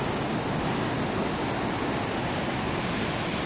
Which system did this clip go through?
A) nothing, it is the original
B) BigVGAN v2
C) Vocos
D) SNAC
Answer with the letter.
A